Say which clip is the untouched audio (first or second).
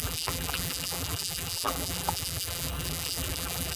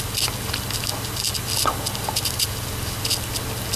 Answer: second